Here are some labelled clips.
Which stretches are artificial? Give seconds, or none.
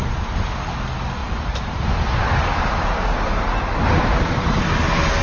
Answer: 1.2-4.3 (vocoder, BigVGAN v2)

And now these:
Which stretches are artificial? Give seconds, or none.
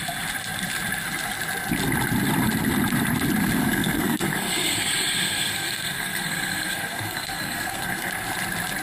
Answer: 3.6-8.1 (codec, SNAC)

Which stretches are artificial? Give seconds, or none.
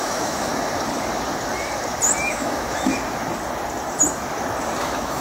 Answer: 0.0-0.5 (autoencoder, DAC-VAE); 2.3-2.9; 4.8-5.2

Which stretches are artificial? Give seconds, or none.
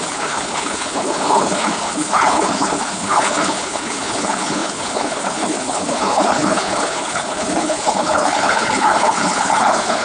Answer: 0.0-10.0 (codec, HILCodec)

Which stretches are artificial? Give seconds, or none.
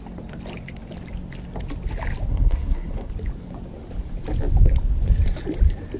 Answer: 2.3-3.1 (codec, SNAC)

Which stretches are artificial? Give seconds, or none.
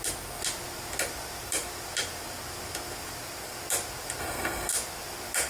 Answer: 4.2-4.7 (codec, SNAC)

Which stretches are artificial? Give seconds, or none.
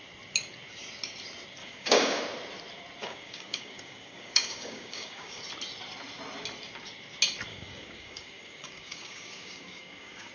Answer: 1.6-2.2 (codec, DAC); 3.0-5.4; 7.5-10.3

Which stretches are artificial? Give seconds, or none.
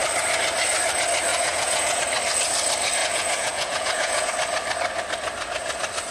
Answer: 1.3-2.0 (vocoder, Vocos); 3.0-4.3